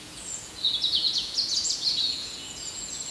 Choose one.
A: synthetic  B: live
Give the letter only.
A